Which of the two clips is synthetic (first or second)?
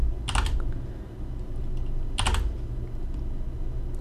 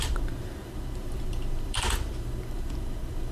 second